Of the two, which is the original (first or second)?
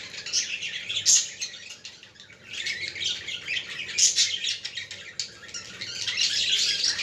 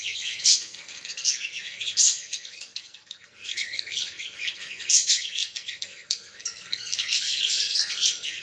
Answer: first